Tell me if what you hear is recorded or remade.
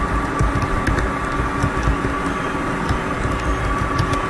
recorded